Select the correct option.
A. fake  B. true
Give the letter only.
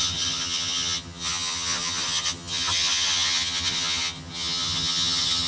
A